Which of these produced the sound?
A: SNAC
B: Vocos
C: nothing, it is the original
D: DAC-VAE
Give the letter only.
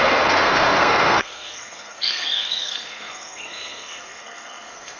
A